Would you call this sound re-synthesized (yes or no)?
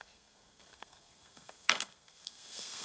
yes